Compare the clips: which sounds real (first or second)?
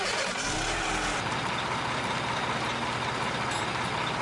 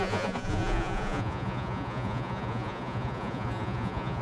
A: first